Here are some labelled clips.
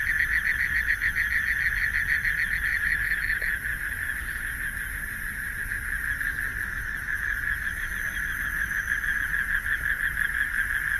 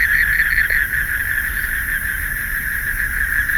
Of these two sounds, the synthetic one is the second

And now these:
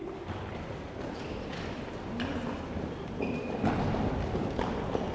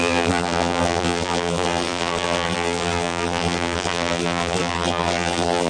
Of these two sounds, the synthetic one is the second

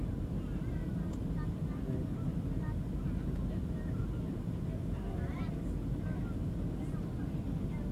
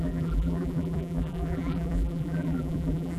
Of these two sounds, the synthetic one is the second